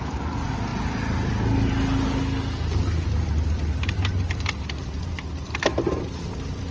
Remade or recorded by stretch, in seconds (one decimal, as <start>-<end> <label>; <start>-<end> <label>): 0.0-6.7 recorded